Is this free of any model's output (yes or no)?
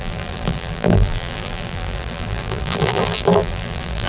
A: no